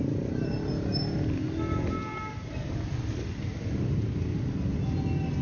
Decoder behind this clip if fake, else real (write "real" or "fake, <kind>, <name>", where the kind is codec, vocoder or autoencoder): real